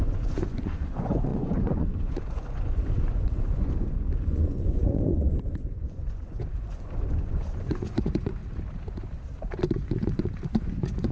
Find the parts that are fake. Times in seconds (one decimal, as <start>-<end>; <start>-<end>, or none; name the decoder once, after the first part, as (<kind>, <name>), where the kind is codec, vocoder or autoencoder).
0.0-8.4 (vocoder, Vocos); 9.6-11.1